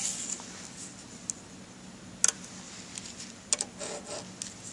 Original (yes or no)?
yes